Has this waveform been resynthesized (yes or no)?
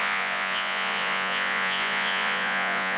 yes